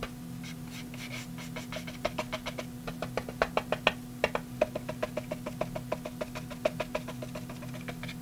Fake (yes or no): no